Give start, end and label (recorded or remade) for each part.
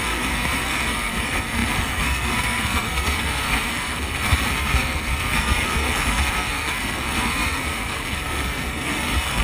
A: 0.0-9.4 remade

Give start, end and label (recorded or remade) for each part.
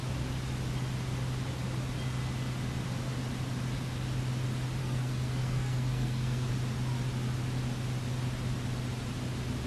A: 0.0-4.8 recorded; 4.8-6.5 remade; 6.5-9.7 recorded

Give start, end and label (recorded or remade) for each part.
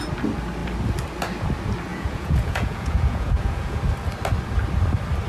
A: 0.0-1.9 recorded; 1.9-3.8 remade; 3.8-5.3 recorded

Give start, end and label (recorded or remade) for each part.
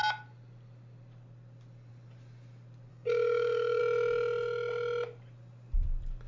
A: 0.0-2.9 recorded; 2.9-3.8 remade; 3.8-6.3 recorded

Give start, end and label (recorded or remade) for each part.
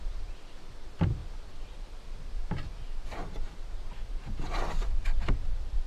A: 0.0-5.9 recorded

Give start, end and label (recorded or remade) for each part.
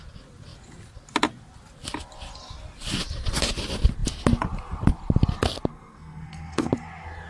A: 0.0-5.7 recorded; 5.7-6.7 remade; 6.7-7.3 recorded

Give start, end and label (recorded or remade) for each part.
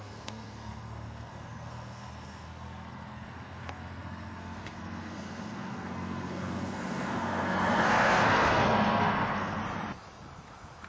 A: 0.0-9.6 remade; 9.6-10.9 recorded